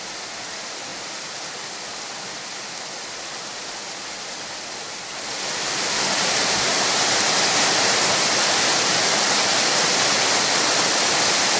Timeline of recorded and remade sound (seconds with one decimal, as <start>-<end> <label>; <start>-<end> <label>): 0.0-11.6 recorded